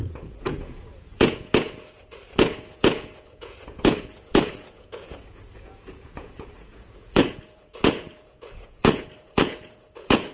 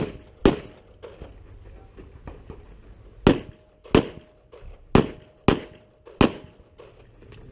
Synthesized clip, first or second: first